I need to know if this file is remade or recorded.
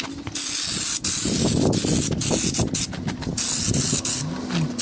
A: recorded